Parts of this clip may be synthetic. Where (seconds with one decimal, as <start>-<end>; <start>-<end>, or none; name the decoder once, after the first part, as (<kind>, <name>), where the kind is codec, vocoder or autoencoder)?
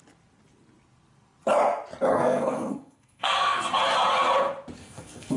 2.1-3.6 (codec, SNAC); 4.8-5.4